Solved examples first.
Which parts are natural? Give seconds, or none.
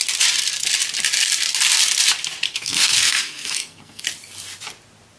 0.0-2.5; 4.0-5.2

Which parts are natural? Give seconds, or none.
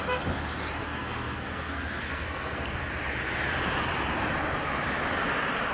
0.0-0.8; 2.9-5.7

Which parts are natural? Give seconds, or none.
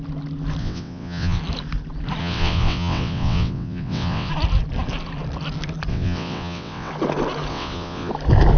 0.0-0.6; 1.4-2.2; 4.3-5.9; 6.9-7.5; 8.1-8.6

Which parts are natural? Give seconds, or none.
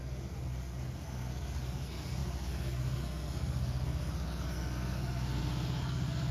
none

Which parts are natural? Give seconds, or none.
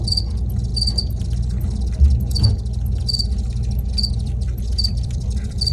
0.7-4.1